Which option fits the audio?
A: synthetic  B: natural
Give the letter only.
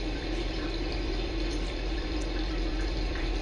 A